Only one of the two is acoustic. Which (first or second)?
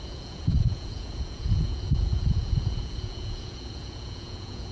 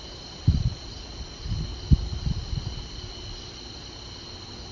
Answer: second